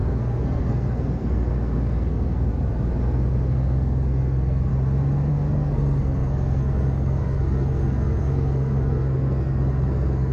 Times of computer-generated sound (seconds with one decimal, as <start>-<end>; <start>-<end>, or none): 0.0-2.5; 3.0-4.7; 5.3-10.3